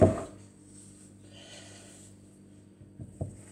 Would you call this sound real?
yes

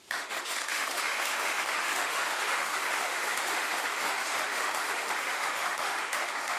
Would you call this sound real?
no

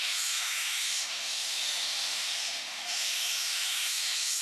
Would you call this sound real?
no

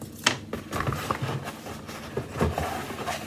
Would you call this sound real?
yes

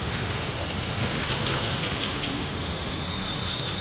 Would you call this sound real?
no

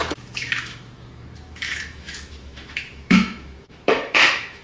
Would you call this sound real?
no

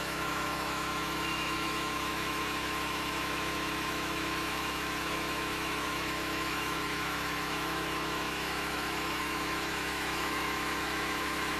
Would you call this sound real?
no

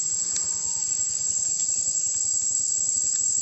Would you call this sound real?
yes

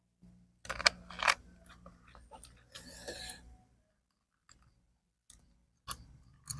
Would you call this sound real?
yes